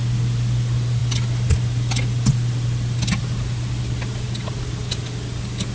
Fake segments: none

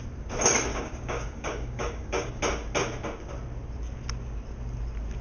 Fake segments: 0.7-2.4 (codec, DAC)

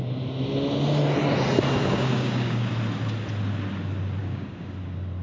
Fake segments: 1.8-2.7 (codec, DAC); 4.2-4.7

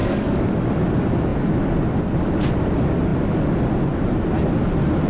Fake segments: 0.0-0.8 (codec, DAC)

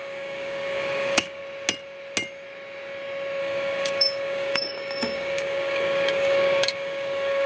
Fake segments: 0.0-1.4 (codec, DAC); 3.4-7.5

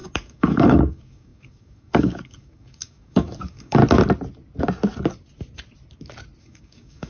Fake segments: 0.0-3.8 (codec, DAC); 6.4-7.1